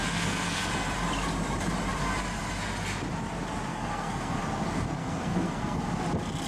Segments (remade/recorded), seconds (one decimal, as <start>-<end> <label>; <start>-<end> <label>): 0.0-0.7 remade; 0.7-3.7 recorded; 3.7-4.4 remade; 4.4-5.0 recorded; 5.0-5.9 remade; 5.9-6.5 recorded